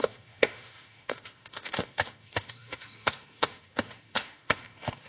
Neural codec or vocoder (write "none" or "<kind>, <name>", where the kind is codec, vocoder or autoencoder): autoencoder, DAC-VAE